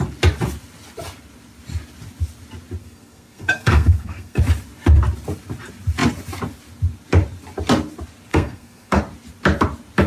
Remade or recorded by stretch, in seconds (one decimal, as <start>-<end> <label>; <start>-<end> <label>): 0.0-2.8 recorded; 2.8-4.4 remade; 4.4-8.3 recorded; 8.3-9.0 remade; 9.0-10.1 recorded